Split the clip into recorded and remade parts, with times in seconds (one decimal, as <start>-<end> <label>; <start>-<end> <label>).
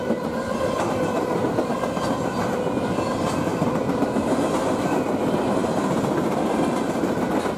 0.0-3.5 recorded; 3.5-4.0 remade; 4.0-7.6 recorded